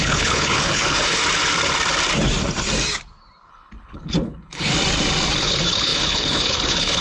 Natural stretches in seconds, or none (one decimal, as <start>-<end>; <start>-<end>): 1.2-3.5; 4.7-5.4